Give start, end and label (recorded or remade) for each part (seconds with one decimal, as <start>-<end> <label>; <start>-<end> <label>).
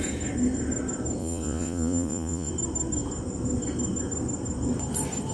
0.0-1.2 recorded; 1.2-2.5 remade; 2.5-5.3 recorded